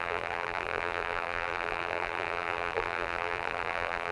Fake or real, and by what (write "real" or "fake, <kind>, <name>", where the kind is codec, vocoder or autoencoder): fake, vocoder, BigVGAN v2